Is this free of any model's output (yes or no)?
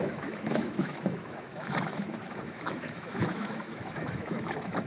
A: no